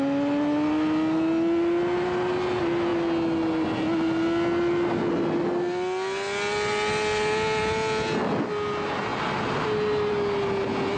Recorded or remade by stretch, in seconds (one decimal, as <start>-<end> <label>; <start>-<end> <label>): 0.0-11.0 recorded